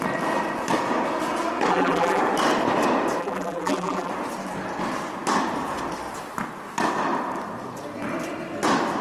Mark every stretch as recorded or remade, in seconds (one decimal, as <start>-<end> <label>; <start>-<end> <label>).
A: 0.0-1.7 recorded; 1.7-2.2 remade; 2.2-3.2 recorded; 3.2-4.1 remade; 4.1-9.0 recorded